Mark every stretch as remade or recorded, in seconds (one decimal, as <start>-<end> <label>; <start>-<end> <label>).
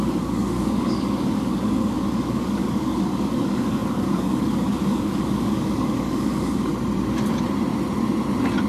0.0-6.7 remade; 6.7-8.7 recorded